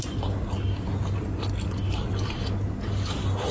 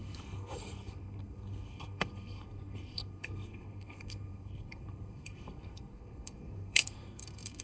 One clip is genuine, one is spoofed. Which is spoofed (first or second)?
second